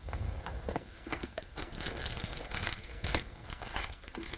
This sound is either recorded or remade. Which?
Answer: remade